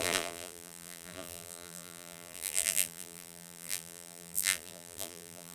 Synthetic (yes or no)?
yes